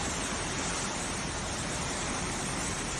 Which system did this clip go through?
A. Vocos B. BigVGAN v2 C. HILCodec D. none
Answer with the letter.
B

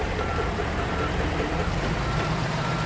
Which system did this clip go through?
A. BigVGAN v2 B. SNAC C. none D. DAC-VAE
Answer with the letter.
A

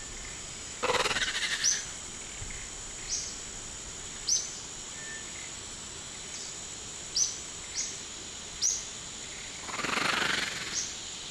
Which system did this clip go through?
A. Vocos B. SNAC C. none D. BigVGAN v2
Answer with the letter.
C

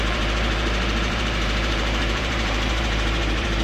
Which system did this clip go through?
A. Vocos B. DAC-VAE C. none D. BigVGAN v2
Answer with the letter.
D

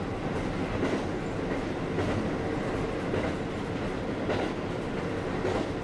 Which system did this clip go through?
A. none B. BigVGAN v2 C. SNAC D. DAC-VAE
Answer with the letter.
A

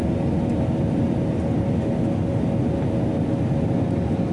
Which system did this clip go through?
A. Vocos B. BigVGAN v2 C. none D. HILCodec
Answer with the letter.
C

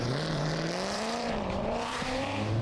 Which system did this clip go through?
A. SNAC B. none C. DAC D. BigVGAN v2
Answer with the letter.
D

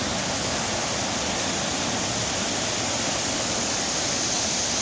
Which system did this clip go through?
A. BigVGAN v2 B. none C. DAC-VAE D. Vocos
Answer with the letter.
B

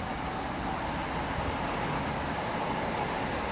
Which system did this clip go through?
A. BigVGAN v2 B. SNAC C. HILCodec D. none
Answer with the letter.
D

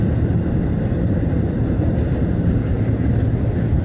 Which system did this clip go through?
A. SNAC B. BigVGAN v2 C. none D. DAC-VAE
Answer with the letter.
C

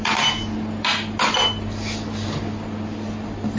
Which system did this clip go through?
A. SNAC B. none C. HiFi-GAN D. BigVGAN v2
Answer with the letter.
B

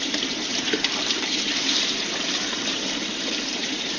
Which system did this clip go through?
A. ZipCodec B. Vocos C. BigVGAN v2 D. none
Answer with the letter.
C